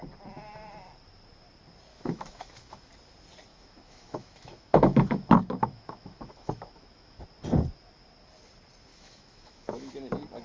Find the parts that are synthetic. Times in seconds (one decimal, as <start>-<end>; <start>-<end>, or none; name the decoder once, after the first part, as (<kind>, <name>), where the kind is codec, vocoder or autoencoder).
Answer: 1.9-2.9 (autoencoder, DAC-VAE); 3.5-7.2; 8.9-9.9